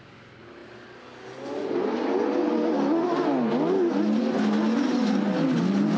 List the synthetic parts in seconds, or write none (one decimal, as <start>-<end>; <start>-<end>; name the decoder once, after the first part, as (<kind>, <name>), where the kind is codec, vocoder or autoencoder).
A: none